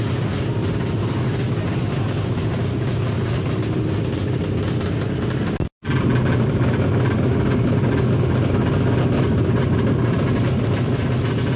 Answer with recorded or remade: recorded